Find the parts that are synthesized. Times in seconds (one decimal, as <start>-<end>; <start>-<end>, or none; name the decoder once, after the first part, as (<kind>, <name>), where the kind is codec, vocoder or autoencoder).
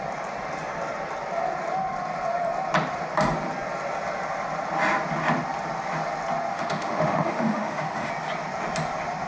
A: 6.5-8.1 (autoencoder, DAC-VAE)